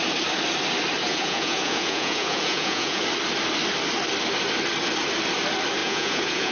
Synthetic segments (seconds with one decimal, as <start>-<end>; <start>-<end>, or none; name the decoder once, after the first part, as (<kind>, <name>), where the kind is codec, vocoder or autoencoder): 1.1-3.0 (vocoder, Vocos); 5.8-6.5